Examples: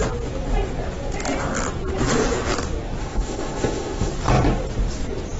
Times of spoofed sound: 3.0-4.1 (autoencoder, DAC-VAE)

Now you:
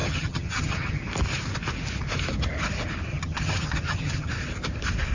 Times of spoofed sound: 0.0-1.0 (vocoder, HiFi-GAN); 3.1-4.3